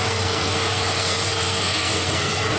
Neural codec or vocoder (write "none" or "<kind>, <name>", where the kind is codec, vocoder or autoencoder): codec, SNAC